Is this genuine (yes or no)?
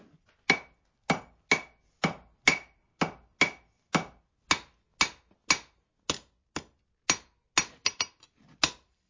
yes